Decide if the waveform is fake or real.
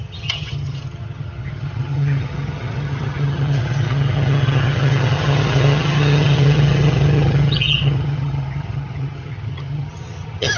fake